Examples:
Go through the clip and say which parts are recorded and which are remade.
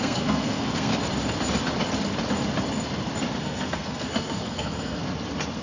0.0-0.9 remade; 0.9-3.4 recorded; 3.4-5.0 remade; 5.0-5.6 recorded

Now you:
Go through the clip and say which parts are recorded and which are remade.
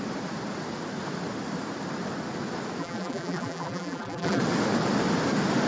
0.0-2.8 recorded; 2.8-4.4 remade; 4.4-5.7 recorded